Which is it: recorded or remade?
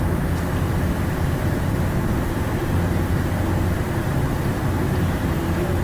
recorded